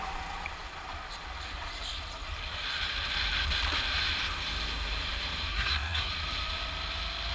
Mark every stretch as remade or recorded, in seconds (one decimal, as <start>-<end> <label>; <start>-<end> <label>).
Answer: 0.0-5.5 recorded; 5.5-6.1 remade; 6.1-7.3 recorded